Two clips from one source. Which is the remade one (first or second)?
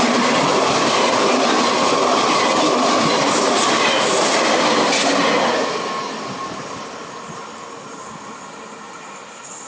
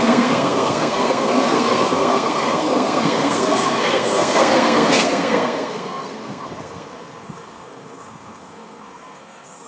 second